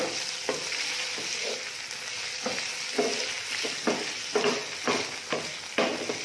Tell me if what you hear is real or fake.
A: real